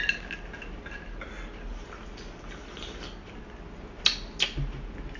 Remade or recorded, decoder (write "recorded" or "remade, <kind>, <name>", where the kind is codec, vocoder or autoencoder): recorded